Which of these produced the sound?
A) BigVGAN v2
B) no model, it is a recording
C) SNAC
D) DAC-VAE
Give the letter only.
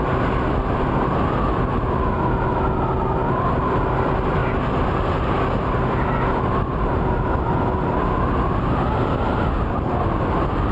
B